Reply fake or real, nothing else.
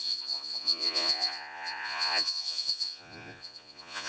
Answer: fake